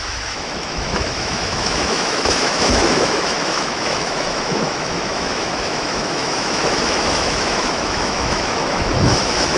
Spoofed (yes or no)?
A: yes